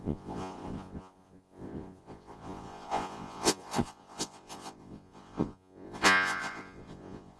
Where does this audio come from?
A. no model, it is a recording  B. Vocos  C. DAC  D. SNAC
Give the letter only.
B